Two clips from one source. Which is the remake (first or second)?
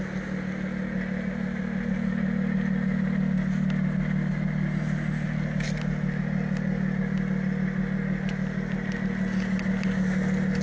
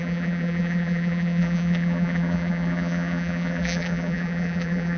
second